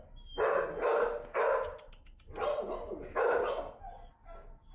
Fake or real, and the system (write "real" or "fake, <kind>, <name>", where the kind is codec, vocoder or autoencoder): real